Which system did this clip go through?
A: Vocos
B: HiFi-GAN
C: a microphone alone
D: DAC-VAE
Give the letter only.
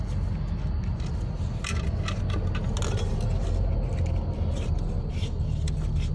C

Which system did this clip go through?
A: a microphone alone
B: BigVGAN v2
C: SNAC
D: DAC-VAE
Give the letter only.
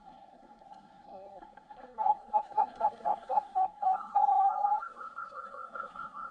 C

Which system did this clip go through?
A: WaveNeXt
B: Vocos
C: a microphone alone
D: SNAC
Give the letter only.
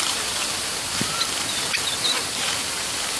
C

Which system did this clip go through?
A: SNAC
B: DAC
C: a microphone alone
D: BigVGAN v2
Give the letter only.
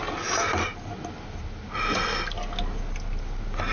C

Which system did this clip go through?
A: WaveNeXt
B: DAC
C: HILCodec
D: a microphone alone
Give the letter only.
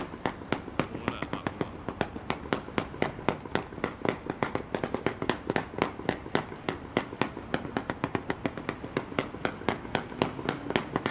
D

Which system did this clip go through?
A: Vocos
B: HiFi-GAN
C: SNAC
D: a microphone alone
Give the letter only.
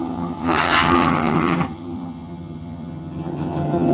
B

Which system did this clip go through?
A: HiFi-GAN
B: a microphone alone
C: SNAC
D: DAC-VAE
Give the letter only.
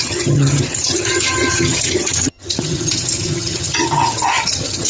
A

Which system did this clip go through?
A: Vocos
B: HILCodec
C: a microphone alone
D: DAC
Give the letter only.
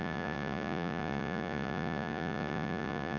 A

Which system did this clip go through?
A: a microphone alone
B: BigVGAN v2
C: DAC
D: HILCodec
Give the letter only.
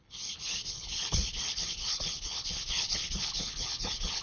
D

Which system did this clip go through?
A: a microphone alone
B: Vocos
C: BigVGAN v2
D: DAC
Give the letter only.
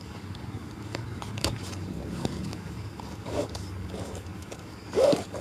D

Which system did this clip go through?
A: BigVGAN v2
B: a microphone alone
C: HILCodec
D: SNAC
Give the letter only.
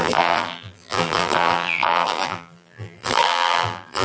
A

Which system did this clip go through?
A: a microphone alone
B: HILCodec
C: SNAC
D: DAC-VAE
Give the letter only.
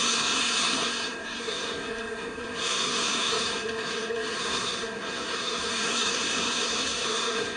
C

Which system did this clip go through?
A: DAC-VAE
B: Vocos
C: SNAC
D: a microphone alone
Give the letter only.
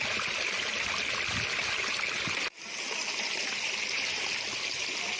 D